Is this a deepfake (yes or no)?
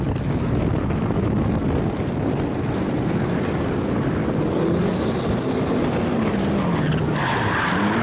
no